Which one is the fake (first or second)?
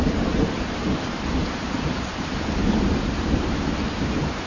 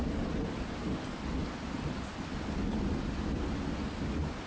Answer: first